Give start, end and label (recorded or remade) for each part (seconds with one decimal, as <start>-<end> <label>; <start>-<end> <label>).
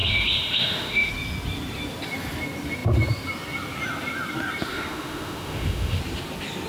0.0-1.1 remade; 1.1-4.7 recorded; 4.7-6.0 remade; 6.0-6.7 recorded